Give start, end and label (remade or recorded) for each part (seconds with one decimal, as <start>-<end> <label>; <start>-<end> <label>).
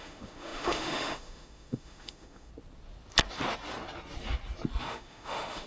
0.0-2.5 remade; 2.5-4.8 recorded; 4.8-5.7 remade